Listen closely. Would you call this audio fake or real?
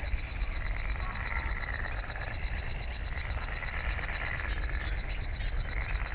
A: real